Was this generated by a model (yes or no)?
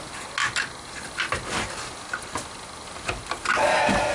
no